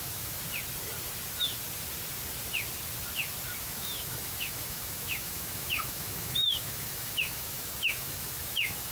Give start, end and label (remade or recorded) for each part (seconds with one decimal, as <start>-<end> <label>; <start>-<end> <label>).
0.0-0.4 remade; 0.4-3.6 recorded; 3.6-8.9 remade